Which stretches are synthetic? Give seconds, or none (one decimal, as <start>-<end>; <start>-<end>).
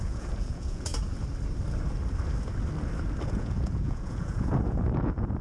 0.0-0.9; 3.3-5.4